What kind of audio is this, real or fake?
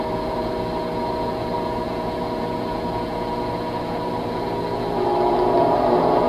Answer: real